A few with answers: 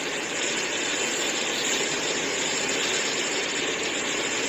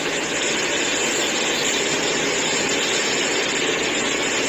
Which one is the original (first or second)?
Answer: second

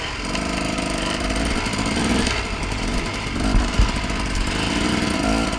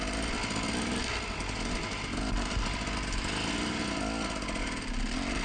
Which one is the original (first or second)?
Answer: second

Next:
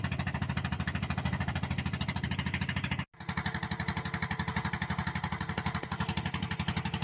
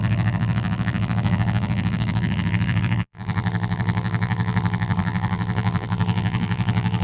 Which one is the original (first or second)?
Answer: first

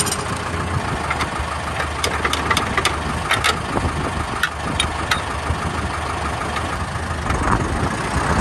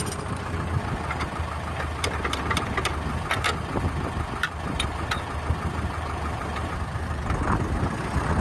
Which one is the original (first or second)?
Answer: first